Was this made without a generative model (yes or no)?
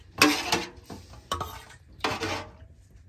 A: yes